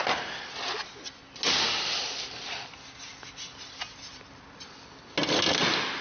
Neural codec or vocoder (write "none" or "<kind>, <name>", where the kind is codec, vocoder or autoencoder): none